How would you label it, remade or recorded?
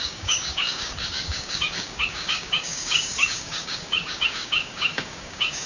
remade